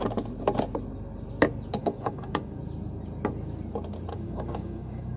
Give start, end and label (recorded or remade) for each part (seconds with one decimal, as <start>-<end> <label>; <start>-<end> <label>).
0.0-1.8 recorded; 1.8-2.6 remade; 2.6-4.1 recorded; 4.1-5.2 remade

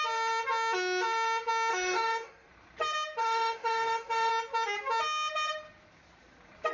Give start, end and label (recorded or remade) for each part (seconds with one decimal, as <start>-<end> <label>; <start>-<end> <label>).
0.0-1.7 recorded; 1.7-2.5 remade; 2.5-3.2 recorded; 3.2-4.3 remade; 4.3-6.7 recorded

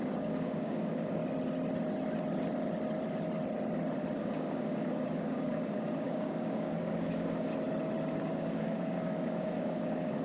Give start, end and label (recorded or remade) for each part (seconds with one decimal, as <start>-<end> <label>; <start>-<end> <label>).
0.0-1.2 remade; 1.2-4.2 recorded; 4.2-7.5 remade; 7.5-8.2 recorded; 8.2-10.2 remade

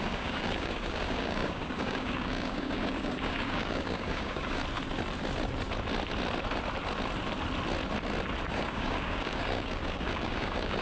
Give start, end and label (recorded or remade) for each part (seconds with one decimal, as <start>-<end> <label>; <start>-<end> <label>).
0.0-4.6 remade; 4.6-8.5 recorded; 8.5-10.8 remade